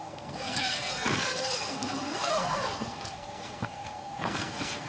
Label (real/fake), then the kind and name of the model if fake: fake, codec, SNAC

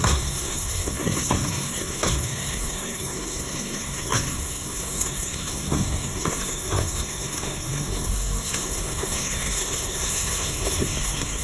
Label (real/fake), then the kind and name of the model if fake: fake, codec, SNAC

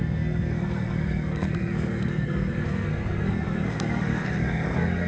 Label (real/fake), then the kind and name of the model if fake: fake, codec, SNAC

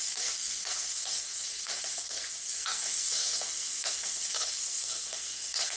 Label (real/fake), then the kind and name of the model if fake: fake, codec, SNAC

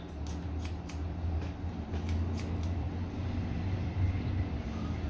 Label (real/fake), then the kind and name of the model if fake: real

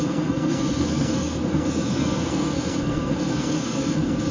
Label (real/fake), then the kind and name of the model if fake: fake, codec, SNAC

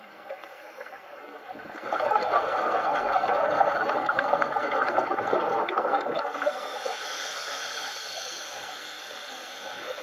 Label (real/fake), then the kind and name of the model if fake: fake, codec, SNAC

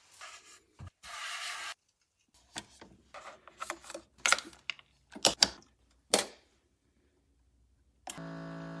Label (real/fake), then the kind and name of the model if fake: real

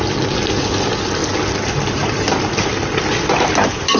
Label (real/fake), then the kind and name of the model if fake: real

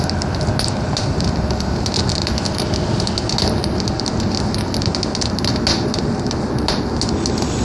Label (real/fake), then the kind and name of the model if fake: real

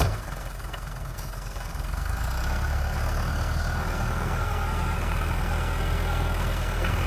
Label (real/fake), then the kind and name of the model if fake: fake, codec, SNAC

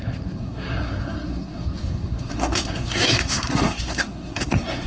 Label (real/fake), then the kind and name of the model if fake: fake, codec, SNAC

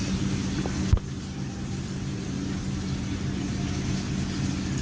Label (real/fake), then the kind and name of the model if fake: real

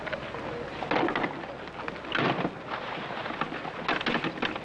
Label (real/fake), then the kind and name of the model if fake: real